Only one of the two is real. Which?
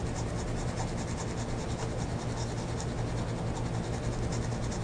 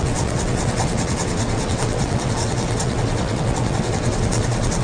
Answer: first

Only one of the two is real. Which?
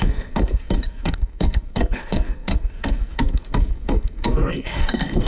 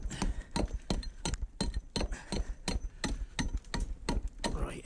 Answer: second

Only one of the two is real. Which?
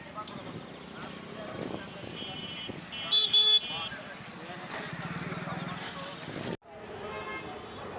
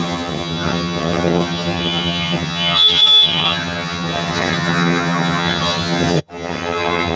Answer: first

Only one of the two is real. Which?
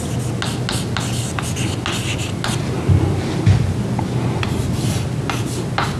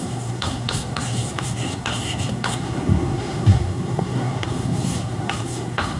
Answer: first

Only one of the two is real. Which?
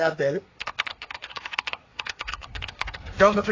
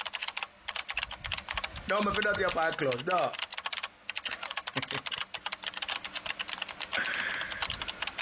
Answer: second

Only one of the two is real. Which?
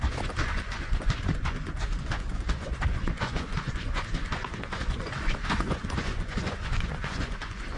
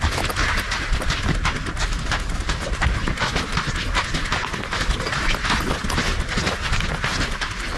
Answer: second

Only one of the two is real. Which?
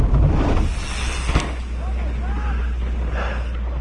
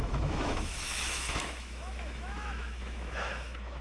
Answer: first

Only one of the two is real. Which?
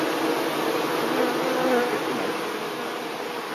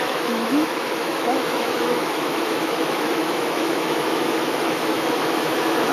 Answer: first